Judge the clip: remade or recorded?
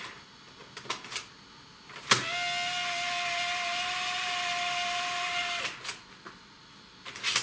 recorded